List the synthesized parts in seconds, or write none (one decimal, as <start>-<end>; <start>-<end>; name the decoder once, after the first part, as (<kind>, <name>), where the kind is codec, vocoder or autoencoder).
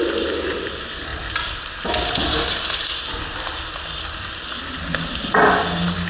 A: none